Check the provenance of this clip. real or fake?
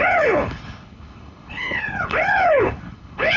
fake